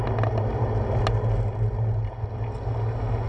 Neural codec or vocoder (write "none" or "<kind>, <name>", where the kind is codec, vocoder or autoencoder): none